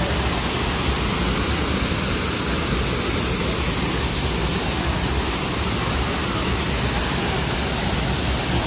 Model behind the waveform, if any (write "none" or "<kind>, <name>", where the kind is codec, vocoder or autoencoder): none